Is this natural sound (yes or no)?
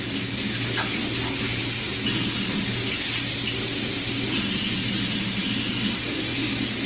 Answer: yes